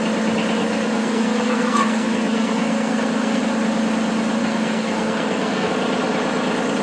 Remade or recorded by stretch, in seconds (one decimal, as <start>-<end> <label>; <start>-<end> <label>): 0.0-0.6 recorded; 0.6-3.4 remade; 3.4-4.4 recorded; 4.4-5.7 remade; 5.7-6.8 recorded